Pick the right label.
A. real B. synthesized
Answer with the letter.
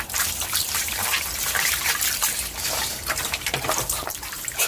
B